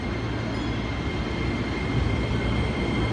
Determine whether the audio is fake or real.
real